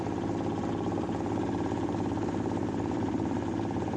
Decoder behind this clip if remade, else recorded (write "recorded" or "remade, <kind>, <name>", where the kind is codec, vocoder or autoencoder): remade, vocoder, BigVGAN v2